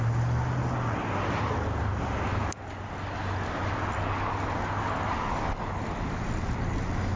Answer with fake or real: real